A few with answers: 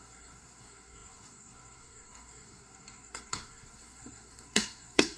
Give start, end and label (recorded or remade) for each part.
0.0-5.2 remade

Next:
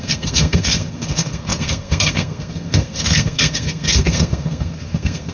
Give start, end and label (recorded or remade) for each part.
0.0-5.3 remade

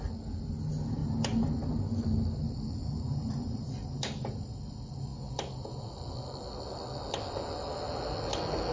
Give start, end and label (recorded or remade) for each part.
0.0-8.7 recorded